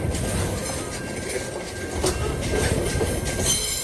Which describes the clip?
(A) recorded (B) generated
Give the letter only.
A